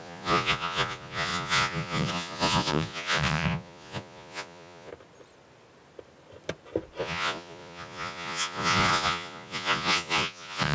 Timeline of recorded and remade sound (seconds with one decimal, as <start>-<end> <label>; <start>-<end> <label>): 0.0-4.9 remade; 4.9-7.0 recorded; 7.0-10.7 remade